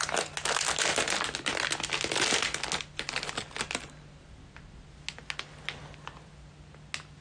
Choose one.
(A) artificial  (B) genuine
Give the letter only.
B